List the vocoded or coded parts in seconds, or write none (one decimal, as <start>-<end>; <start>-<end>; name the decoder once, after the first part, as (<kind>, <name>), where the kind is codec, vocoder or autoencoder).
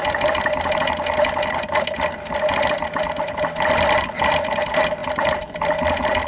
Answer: none